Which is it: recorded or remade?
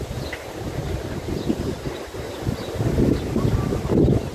recorded